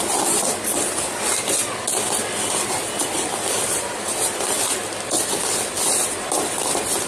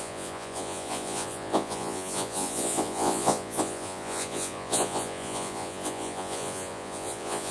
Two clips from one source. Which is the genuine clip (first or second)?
first